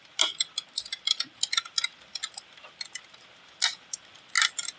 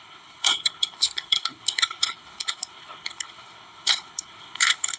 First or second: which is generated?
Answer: second